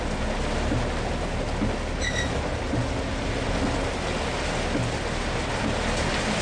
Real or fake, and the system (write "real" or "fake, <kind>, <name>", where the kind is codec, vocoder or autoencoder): real